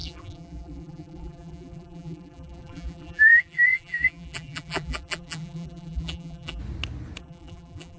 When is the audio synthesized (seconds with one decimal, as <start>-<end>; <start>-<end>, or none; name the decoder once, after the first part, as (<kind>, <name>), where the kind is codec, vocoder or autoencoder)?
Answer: 0.0-6.6 (vocoder, BigVGAN v2); 7.2-8.0